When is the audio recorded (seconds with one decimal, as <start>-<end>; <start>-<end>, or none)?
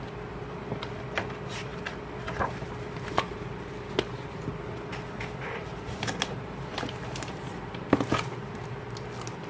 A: none